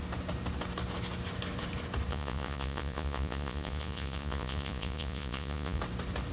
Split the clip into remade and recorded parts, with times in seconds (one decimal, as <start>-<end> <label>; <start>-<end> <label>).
0.0-2.1 recorded; 2.1-5.8 remade; 5.8-6.3 recorded